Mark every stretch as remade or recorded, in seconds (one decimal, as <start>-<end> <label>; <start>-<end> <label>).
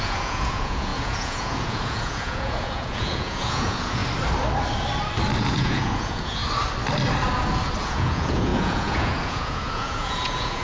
0.0-4.0 remade; 4.0-5.4 recorded; 5.4-6.4 remade; 6.4-7.8 recorded; 7.8-10.6 remade